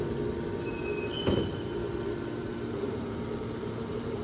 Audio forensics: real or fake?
fake